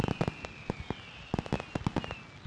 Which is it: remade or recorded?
recorded